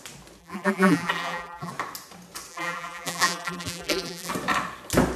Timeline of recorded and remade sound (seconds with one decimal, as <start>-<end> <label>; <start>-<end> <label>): 0.0-0.4 recorded; 0.4-1.7 remade; 1.7-2.5 recorded; 2.5-4.3 remade; 4.3-5.2 recorded